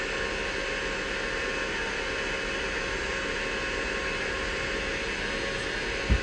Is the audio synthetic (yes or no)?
no